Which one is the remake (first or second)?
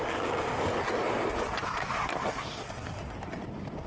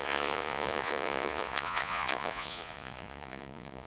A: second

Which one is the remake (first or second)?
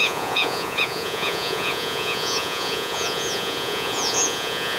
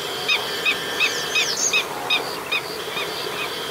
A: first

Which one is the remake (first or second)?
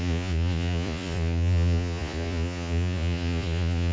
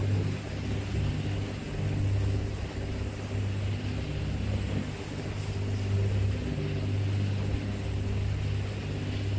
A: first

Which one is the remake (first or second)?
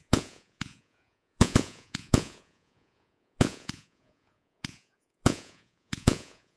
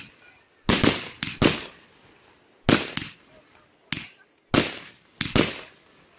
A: first